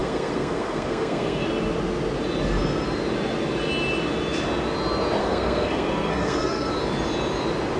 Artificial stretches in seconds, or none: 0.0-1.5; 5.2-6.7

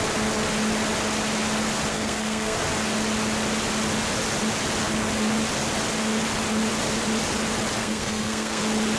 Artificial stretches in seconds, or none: 1.9-2.6; 7.8-8.6